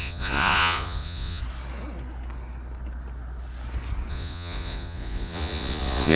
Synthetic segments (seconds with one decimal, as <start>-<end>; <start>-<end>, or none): 0.0-1.4; 4.1-6.2